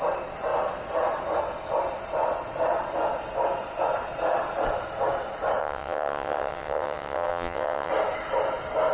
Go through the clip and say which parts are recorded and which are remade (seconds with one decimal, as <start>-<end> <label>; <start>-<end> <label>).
0.0-5.6 recorded; 5.6-7.9 remade; 7.9-8.9 recorded